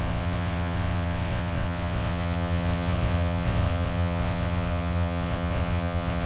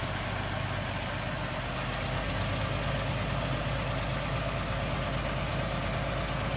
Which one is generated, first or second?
first